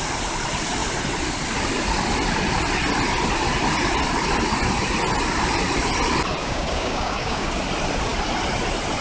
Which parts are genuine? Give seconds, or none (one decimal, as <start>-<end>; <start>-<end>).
0.0-6.4; 7.6-9.0